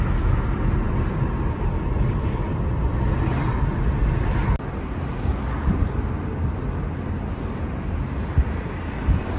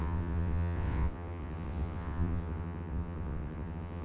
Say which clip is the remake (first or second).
second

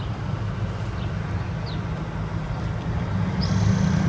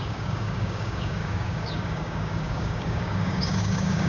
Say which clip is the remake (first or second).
second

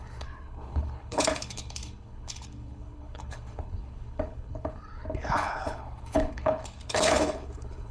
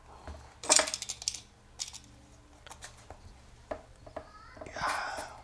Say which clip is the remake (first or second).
first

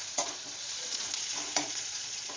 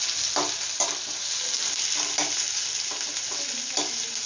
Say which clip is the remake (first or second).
first